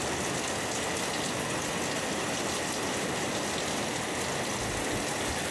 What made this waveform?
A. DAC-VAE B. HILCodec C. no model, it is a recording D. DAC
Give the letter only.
C